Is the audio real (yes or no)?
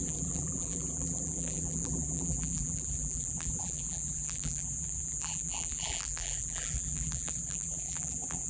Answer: no